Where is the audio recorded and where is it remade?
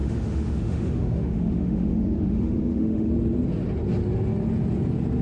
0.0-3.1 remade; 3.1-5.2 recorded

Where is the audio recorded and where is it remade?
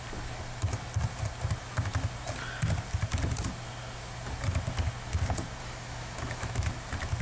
0.0-5.6 recorded; 5.6-6.7 remade; 6.7-7.2 recorded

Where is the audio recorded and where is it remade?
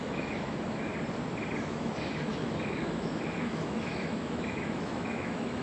0.0-0.9 remade; 0.9-1.6 recorded; 1.6-5.6 remade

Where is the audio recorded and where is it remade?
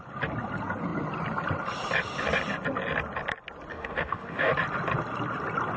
0.0-3.7 recorded; 3.7-4.5 remade; 4.5-5.8 recorded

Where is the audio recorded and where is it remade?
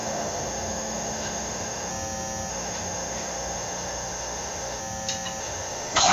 0.0-1.9 remade; 1.9-2.5 recorded; 2.5-4.8 remade; 4.8-5.4 recorded; 5.4-6.1 remade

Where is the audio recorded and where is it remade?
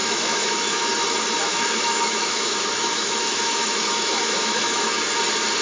0.0-0.9 remade; 0.9-1.5 recorded; 1.5-4.9 remade; 4.9-5.6 recorded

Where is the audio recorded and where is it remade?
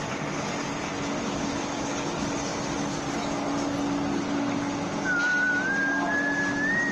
0.0-6.9 recorded